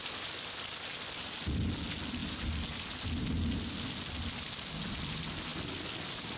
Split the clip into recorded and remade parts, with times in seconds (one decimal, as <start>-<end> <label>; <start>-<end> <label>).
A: 0.0-6.4 recorded